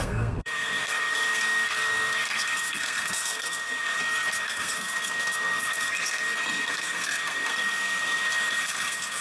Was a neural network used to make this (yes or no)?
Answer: yes